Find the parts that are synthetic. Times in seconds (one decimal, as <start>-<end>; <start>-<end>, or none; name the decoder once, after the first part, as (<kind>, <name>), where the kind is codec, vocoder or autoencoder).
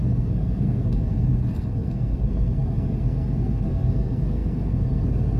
0.0-5.4 (codec, SNAC)